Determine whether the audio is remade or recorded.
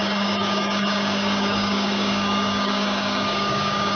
remade